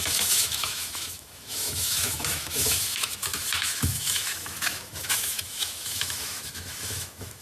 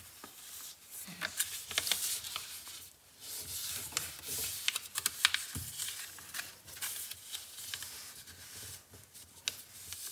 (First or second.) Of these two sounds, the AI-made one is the first